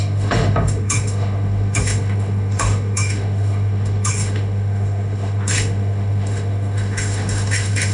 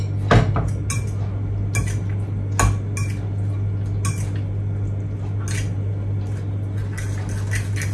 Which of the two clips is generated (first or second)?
first